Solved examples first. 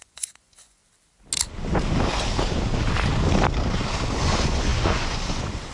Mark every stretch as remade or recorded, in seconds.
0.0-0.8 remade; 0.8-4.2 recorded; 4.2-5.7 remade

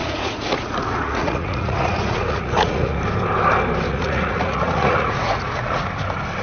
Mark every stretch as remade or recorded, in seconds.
0.0-3.0 remade; 3.0-3.9 recorded; 3.9-5.9 remade; 5.9-6.4 recorded

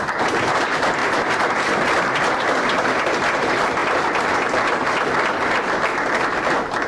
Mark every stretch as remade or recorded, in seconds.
0.0-6.9 recorded